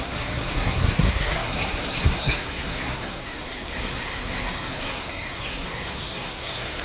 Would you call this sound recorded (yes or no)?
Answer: no